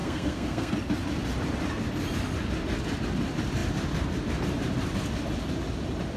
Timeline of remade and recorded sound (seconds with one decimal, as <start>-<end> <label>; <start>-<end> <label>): 0.0-0.7 remade; 0.7-6.2 recorded